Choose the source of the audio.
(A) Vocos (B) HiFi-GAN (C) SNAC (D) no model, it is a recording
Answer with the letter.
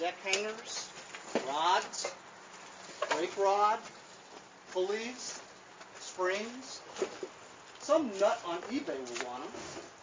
D